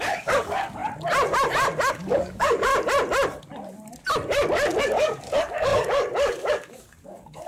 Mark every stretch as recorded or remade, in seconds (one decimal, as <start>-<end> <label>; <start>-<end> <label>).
0.0-0.8 remade; 0.8-1.9 recorded; 1.9-2.7 remade; 2.7-4.8 recorded; 4.8-7.5 remade